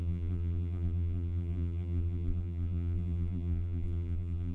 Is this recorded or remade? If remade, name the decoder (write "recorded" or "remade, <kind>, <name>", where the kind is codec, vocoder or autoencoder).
remade, vocoder, BigVGAN v2